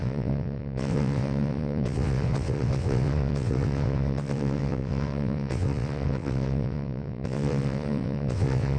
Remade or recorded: remade